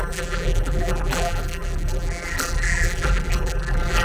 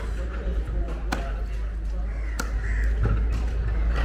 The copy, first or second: first